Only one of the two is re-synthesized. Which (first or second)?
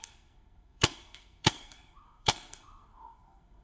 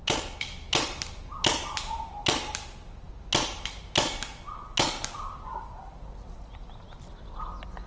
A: first